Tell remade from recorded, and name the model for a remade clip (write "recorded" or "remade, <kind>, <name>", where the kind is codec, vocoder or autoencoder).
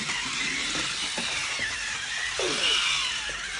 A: remade, vocoder, BigVGAN v2